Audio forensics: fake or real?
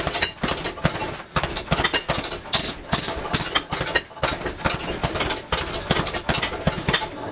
real